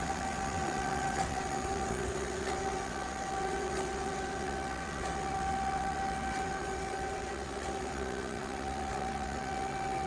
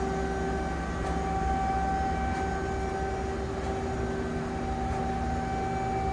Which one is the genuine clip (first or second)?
second